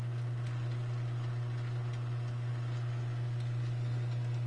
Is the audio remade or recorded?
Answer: recorded